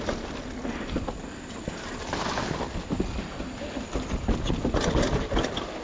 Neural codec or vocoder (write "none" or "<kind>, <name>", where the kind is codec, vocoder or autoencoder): none